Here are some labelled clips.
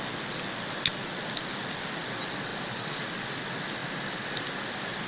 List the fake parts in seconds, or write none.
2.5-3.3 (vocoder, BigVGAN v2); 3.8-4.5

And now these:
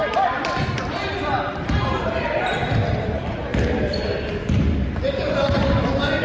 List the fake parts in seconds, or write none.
0.0-3.5 (vocoder, BigVGAN v2); 4.2-6.2

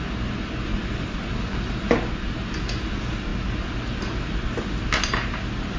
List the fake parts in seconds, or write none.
none

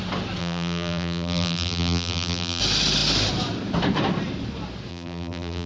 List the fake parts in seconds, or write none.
0.4-2.6 (vocoder, BigVGAN v2); 4.9-5.7

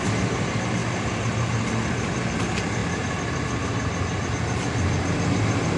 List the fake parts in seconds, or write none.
0.0-2.8 (vocoder, BigVGAN v2); 4.3-5.8

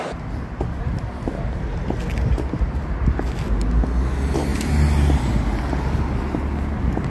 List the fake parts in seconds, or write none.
none

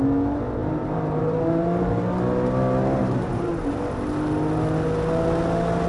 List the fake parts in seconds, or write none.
0.6-1.9 (vocoder, BigVGAN v2); 3.0-3.5